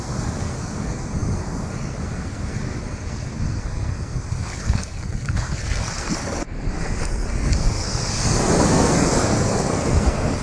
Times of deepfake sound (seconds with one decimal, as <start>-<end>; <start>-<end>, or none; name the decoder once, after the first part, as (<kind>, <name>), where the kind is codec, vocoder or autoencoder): 0.0-10.4 (codec, SNAC)